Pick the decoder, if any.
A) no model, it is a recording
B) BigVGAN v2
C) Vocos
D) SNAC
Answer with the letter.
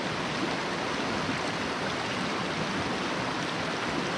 A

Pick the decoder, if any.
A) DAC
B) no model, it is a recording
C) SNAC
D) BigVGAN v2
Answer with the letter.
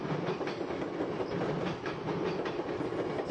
B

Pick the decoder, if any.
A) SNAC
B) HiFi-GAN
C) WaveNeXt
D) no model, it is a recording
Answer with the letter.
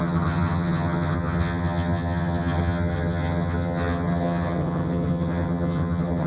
B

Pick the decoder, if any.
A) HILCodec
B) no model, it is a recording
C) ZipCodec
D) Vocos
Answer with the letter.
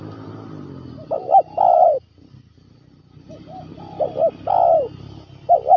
B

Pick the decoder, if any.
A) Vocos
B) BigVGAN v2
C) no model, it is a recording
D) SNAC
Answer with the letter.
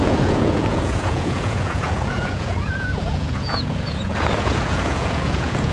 A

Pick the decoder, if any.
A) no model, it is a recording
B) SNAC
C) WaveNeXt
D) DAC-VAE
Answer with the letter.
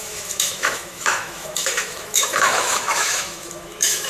D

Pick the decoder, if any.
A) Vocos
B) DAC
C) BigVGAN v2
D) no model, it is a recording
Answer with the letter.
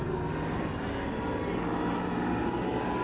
D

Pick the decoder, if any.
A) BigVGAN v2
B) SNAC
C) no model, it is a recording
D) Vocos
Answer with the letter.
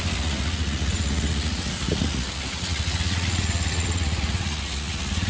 D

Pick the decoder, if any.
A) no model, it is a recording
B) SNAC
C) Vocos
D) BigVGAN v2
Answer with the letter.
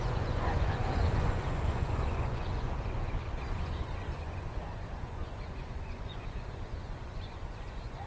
C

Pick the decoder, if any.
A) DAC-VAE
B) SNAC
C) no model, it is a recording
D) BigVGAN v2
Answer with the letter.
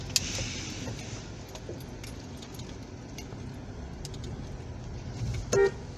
C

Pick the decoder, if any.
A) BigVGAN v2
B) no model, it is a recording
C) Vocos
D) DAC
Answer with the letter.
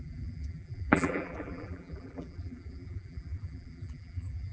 A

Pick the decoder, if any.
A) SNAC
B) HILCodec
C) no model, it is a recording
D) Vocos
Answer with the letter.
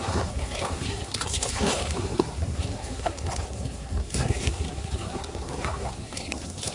A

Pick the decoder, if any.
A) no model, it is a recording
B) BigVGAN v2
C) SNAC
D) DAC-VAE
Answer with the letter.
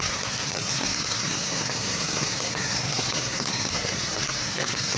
C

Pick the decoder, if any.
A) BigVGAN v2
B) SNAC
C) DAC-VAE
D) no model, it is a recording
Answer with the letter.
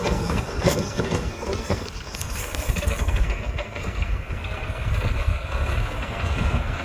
B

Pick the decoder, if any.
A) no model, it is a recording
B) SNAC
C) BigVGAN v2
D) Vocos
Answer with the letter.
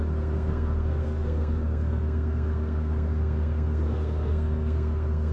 B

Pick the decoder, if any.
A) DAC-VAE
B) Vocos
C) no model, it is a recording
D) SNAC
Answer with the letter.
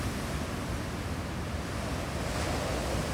C